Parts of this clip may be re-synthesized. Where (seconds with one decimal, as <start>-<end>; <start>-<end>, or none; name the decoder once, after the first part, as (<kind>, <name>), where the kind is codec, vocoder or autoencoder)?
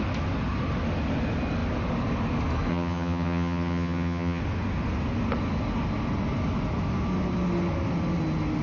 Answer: 2.7-4.4 (vocoder, HiFi-GAN)